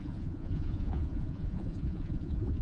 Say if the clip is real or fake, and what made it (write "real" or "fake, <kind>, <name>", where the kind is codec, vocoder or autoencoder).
fake, vocoder, Vocos